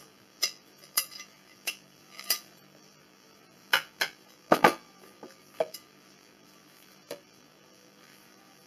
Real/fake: fake